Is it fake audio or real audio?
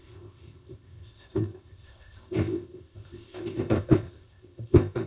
fake